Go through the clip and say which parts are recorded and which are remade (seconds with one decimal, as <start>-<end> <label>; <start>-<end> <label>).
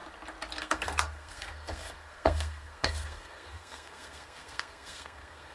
0.0-0.6 recorded; 0.6-5.5 remade